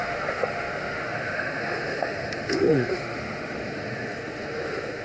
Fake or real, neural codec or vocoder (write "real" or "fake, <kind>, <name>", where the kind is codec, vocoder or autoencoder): fake, autoencoder, DAC-VAE